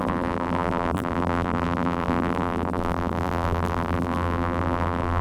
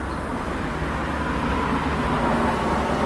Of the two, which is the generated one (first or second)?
first